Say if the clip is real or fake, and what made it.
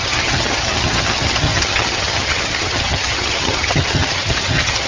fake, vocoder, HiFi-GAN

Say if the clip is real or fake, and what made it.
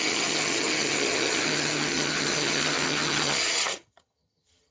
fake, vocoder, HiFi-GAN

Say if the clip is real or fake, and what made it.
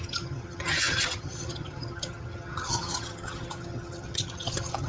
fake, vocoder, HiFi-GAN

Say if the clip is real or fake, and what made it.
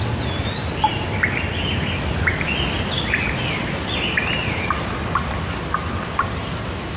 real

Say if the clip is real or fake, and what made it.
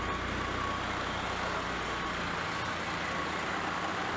real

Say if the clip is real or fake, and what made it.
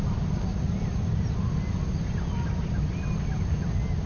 real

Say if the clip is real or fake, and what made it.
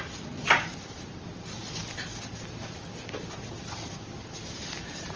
real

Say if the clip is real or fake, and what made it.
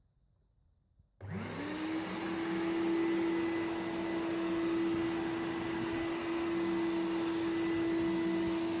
real